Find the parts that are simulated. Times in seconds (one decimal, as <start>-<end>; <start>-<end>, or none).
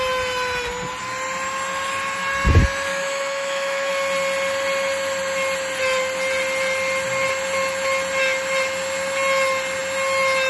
2.9-3.9